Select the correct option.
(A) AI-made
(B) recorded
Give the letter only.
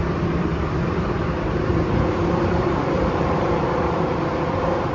A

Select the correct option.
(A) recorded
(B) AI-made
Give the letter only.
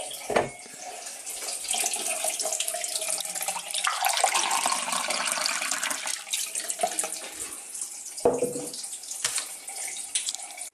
A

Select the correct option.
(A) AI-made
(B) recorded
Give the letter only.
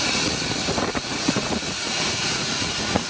A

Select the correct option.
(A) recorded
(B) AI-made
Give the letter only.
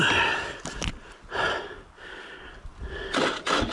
A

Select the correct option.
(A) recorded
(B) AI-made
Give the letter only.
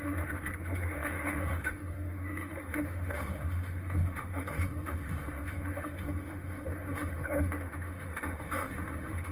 B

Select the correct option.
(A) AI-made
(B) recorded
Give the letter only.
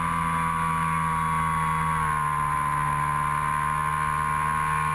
B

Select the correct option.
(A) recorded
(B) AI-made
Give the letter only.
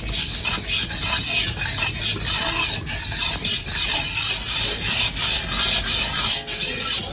A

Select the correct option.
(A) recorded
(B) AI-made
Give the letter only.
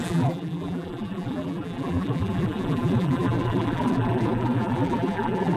B